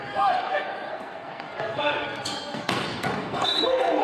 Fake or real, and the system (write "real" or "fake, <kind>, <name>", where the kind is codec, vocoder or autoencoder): fake, codec, SNAC